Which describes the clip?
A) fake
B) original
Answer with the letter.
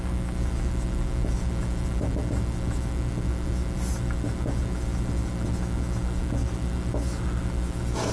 B